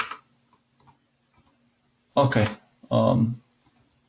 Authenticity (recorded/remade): recorded